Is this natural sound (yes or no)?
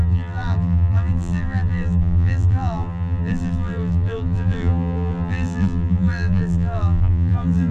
no